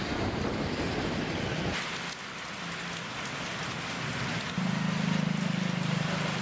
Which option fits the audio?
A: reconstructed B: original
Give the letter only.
B